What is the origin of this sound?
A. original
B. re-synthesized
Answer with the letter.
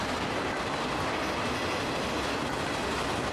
A